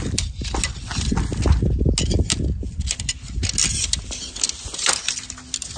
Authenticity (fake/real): real